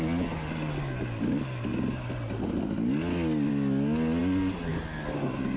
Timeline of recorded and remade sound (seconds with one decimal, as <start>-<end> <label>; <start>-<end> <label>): 0.0-5.6 recorded